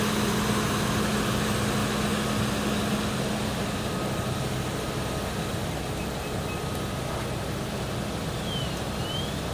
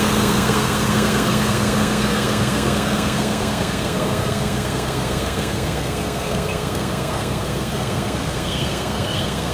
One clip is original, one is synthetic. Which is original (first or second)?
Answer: first